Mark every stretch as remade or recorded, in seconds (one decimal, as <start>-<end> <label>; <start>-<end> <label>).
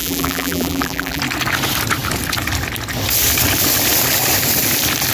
0.0-1.2 remade; 1.2-5.1 recorded